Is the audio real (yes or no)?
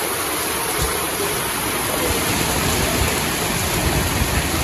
yes